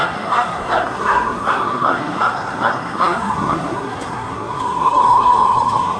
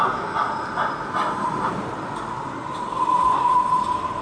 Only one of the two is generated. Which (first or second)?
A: first